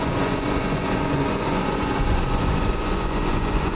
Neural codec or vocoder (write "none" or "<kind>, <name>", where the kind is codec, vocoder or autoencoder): vocoder, Vocos